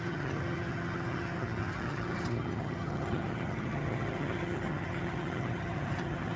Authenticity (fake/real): fake